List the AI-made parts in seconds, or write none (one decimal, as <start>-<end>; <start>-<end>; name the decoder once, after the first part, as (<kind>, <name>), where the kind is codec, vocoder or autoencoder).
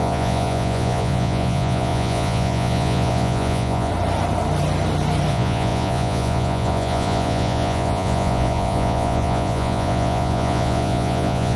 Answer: 0.0-3.9 (vocoder, Vocos); 5.3-11.6